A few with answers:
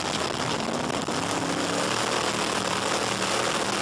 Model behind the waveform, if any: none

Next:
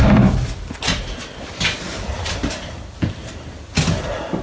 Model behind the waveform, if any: none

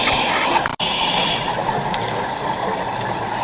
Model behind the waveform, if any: none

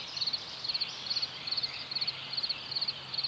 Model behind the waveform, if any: none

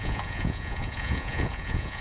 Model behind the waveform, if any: vocoder, Vocos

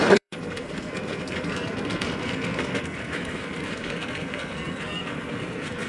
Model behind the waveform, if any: codec, SNAC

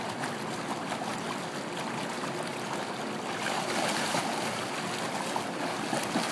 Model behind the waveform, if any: none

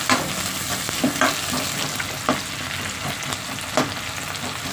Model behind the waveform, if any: none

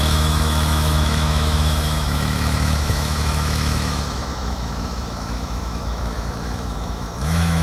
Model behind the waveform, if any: autoencoder, DAC-VAE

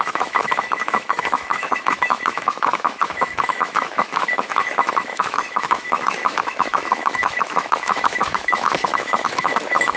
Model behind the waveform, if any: autoencoder, DAC-VAE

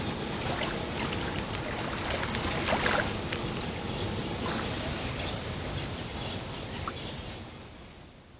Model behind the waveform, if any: none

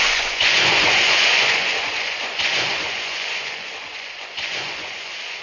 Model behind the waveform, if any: vocoder, Vocos